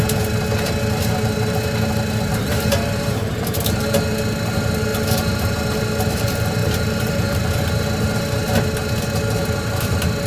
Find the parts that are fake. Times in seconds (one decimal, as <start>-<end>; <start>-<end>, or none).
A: 2.3-3.3; 4.9-5.6; 6.6-7.4